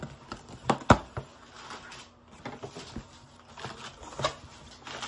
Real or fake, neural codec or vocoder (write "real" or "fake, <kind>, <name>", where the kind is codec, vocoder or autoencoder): real